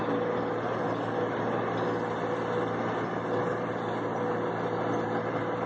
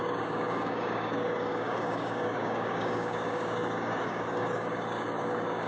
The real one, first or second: first